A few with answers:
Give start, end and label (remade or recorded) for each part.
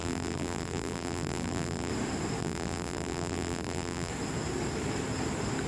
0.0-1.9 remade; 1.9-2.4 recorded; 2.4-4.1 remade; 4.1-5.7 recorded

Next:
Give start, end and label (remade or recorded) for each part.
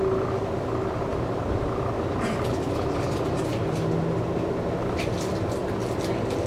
0.0-6.5 recorded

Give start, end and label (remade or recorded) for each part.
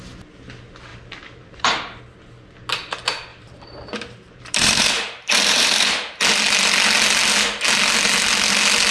0.0-0.9 recorded; 0.9-2.0 remade; 2.0-3.3 recorded; 3.3-6.2 remade; 6.2-8.9 recorded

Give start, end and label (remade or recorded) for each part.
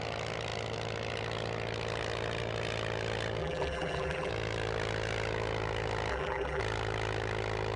0.0-3.4 recorded; 3.4-4.3 remade; 4.3-6.1 recorded; 6.1-6.6 remade; 6.6-7.8 recorded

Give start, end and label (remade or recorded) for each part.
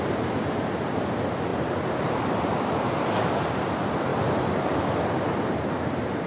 0.0-1.5 recorded; 1.5-3.4 remade; 3.4-4.1 recorded; 4.1-6.3 remade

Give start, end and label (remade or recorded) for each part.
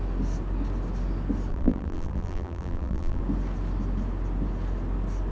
0.0-1.5 recorded; 1.5-3.2 remade; 3.2-5.3 recorded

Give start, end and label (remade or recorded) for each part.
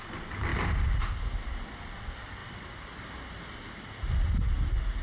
0.0-0.5 recorded; 0.5-1.0 remade; 1.0-2.4 recorded; 2.4-4.4 remade; 4.4-5.0 recorded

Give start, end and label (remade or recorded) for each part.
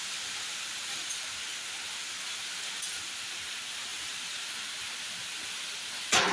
0.0-6.3 recorded